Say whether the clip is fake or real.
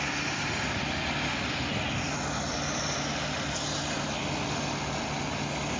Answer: real